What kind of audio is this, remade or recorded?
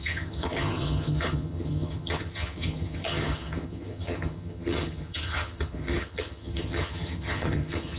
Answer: remade